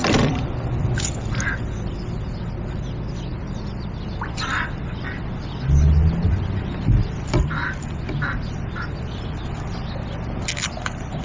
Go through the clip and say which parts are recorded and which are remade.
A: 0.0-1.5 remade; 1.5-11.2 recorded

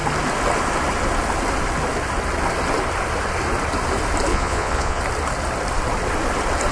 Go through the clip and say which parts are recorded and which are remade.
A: 0.0-4.3 recorded; 4.3-5.0 remade; 5.0-6.7 recorded

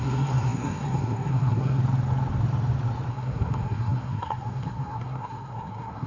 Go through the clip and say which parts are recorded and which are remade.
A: 0.0-1.8 remade; 1.8-3.1 recorded; 3.1-6.1 remade

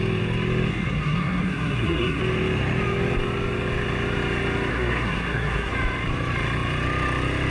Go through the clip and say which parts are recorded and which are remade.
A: 0.0-0.7 recorded; 0.7-2.2 remade; 2.2-4.7 recorded; 4.7-5.7 remade; 5.7-7.5 recorded

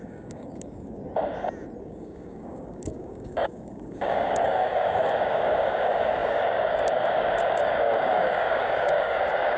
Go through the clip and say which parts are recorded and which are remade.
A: 0.0-1.0 remade; 1.0-1.8 recorded; 1.8-9.6 remade